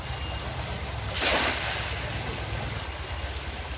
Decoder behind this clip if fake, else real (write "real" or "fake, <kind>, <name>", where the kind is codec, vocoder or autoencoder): real